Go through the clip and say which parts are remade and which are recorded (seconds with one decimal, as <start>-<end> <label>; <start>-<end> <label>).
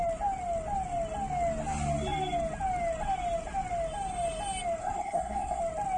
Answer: 0.0-4.8 recorded; 4.8-5.6 remade; 5.6-6.0 recorded